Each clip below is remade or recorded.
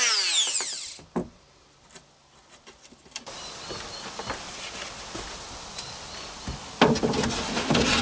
recorded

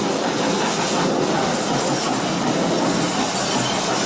recorded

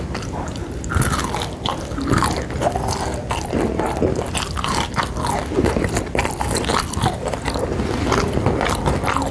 recorded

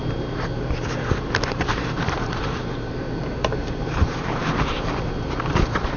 remade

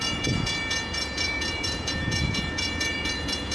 remade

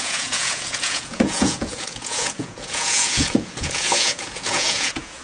remade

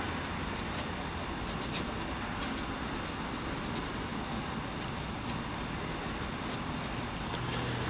recorded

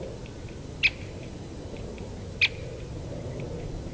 recorded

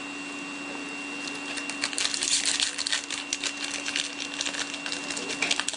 recorded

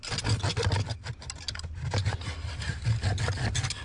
recorded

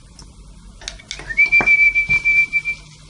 recorded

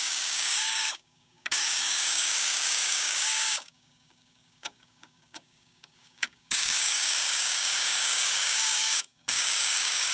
remade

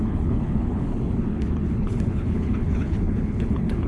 remade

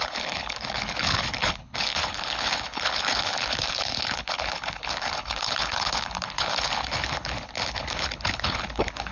remade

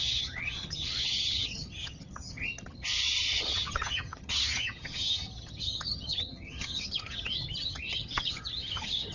remade